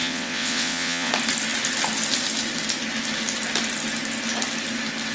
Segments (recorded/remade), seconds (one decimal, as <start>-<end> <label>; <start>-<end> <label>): 0.0-1.1 remade; 1.1-5.1 recorded